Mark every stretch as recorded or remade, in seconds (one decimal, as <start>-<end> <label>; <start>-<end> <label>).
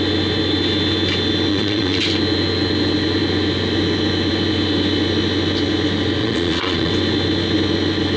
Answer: 0.0-1.5 recorded; 1.5-2.0 remade; 2.0-6.2 recorded; 6.2-6.9 remade; 6.9-8.2 recorded